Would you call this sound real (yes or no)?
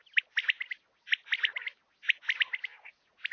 yes